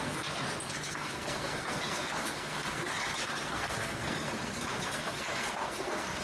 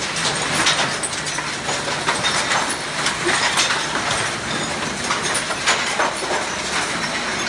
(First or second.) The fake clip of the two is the first